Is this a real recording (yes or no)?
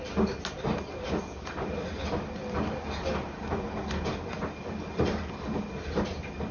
yes